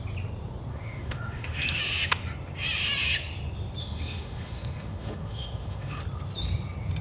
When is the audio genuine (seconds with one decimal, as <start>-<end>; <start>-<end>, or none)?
0.0-0.7; 1.8-3.8; 6.0-7.0